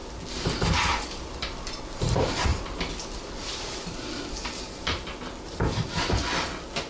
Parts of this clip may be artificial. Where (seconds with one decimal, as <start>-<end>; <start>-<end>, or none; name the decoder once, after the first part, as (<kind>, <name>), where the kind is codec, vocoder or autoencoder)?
2.0-2.5 (vocoder, BigVGAN v2)